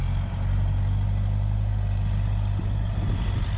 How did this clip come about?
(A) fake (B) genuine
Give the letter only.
B